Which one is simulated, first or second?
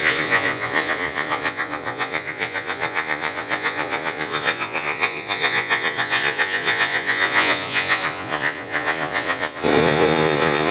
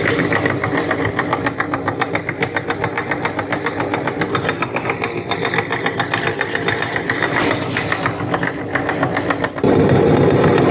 first